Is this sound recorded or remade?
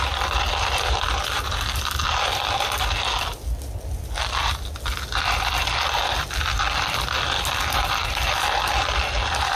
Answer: recorded